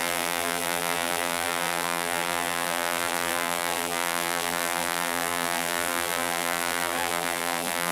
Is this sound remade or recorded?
remade